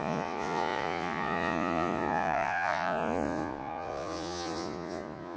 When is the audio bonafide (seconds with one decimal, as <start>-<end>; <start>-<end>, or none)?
none